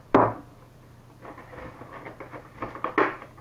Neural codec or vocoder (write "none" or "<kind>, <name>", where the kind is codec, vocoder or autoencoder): none